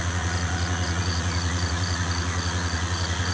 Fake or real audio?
fake